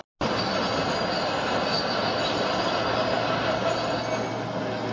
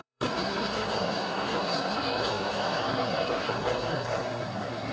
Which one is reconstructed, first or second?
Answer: second